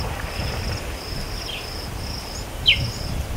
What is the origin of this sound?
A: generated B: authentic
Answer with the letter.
B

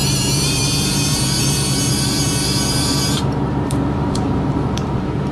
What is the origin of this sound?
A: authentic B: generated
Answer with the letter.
B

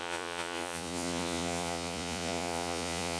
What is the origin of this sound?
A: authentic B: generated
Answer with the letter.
B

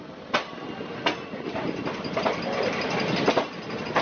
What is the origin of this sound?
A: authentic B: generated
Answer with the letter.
A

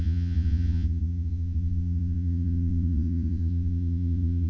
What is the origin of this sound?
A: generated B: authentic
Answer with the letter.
A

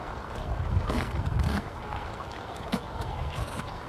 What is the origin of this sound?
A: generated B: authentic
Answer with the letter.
A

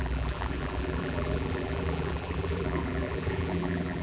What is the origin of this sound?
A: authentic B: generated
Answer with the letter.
B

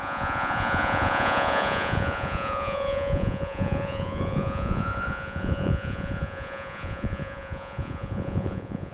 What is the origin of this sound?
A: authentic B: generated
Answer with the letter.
B